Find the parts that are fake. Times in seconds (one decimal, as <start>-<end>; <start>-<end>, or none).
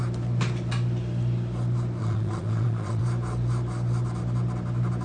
2.0-3.0